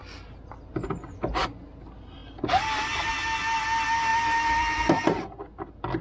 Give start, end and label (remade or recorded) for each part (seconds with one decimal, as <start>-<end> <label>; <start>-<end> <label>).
0.0-2.2 recorded; 2.2-3.1 remade; 3.1-4.1 recorded; 4.1-5.0 remade; 5.0-6.0 recorded